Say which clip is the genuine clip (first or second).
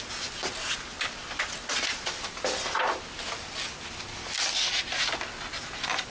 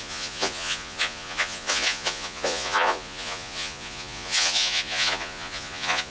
first